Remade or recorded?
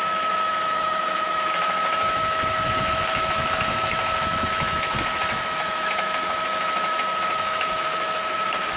remade